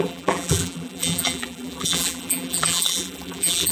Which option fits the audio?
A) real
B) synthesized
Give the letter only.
B